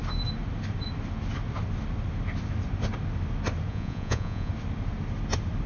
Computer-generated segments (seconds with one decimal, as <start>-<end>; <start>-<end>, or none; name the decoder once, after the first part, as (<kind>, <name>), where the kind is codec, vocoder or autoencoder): 3.7-4.5 (vocoder, Vocos)